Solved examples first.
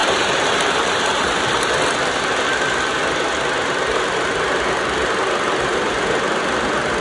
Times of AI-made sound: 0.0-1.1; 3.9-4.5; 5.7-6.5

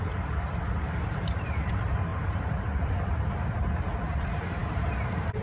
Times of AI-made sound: 0.0-5.4

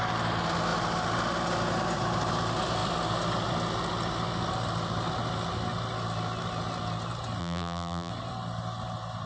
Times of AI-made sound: 7.4-8.1

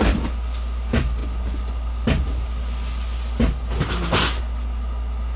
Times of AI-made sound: none

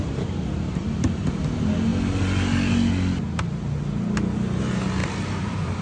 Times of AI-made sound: 0.8-1.3; 5.0-5.8

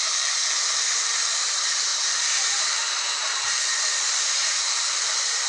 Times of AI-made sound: 0.0-5.5

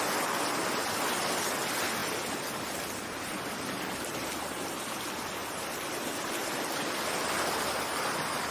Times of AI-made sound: 5.4-7.1